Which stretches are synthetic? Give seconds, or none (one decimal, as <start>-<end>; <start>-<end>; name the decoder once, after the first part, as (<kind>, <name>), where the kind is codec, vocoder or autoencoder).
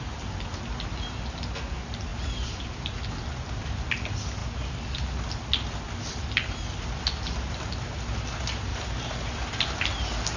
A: 2.1-3.0 (vocoder, BigVGAN v2); 8.7-9.2